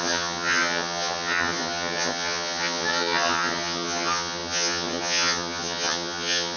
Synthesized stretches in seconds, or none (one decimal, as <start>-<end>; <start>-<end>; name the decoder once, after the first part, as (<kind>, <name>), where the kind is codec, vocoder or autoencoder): 0.0-6.6 (vocoder, HiFi-GAN)